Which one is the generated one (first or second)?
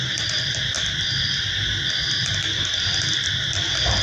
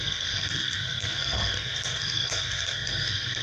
second